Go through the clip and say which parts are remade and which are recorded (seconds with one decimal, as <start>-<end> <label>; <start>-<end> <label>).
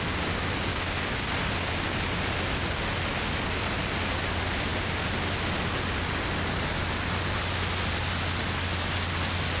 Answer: 0.0-0.7 recorded; 0.7-1.3 remade; 1.3-9.6 recorded